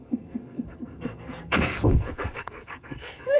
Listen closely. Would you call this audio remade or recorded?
remade